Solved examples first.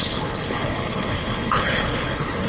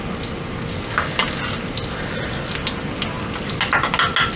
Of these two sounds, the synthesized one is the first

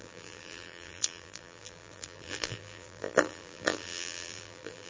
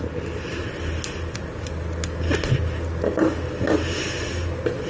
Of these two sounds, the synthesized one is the first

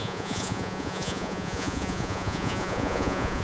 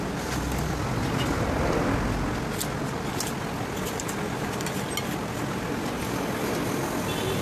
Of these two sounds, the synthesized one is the first